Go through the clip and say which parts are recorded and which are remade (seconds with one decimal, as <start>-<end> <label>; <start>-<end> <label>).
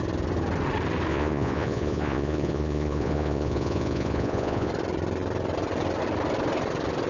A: 0.0-1.1 recorded; 1.1-4.7 remade; 4.7-7.1 recorded